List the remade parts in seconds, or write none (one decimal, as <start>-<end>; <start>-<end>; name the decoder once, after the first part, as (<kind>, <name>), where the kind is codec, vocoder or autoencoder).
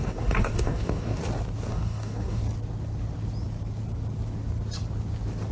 0.0-1.2 (codec, DAC); 1.7-2.4